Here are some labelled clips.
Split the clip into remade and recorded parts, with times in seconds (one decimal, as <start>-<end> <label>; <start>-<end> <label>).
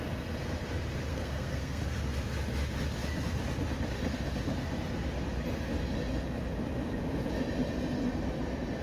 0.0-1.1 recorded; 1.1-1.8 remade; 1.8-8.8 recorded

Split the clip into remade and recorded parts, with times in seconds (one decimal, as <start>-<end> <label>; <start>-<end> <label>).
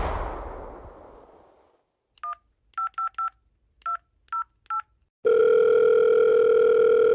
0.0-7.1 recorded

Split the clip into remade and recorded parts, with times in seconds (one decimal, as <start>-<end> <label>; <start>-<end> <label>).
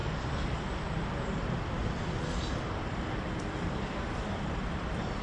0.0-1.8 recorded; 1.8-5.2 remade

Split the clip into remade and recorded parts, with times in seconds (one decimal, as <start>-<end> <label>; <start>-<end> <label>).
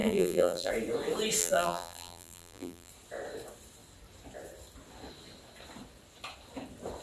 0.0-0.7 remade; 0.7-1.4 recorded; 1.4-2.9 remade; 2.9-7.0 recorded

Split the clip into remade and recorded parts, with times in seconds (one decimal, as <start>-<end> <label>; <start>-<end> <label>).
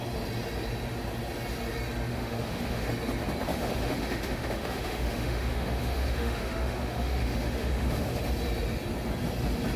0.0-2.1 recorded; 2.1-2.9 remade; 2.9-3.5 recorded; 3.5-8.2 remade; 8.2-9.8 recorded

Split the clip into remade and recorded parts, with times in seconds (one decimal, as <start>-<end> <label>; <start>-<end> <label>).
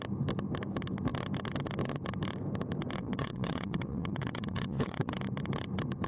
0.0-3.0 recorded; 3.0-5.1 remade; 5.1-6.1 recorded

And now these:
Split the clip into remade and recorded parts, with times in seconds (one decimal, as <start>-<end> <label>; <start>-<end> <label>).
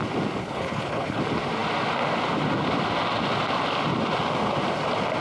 0.0-0.4 recorded; 0.4-1.2 remade; 1.2-5.2 recorded